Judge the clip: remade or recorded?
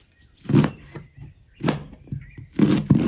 remade